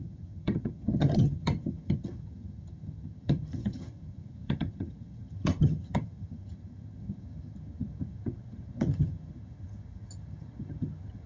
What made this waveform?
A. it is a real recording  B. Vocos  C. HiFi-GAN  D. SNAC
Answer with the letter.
C